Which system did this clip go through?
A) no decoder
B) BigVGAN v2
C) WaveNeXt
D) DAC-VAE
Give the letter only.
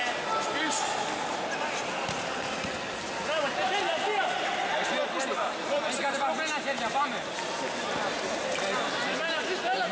A